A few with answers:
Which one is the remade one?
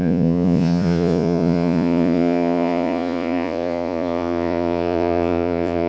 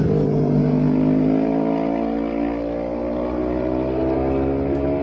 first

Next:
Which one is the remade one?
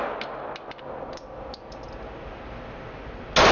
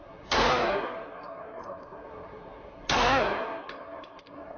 second